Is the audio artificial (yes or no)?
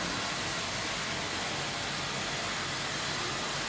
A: no